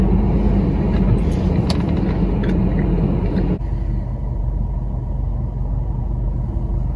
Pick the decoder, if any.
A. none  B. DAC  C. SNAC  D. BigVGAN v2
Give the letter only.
A